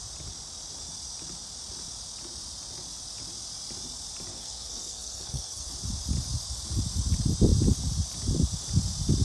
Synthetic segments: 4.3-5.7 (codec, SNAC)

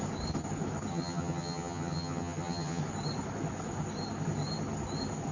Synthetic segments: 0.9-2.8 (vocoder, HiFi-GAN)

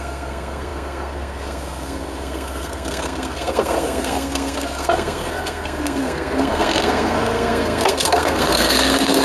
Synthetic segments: 0.0-9.2 (codec, SNAC)